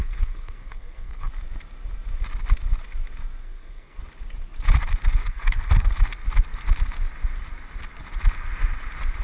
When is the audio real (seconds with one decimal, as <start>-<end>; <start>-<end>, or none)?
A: 1.3-3.4; 4.0-5.2; 5.9-9.2